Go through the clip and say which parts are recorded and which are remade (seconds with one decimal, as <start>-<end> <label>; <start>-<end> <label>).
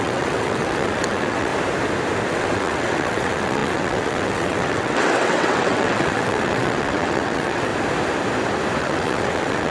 0.0-1.5 remade; 1.5-2.3 recorded; 2.3-7.7 remade; 7.7-8.8 recorded; 8.8-9.7 remade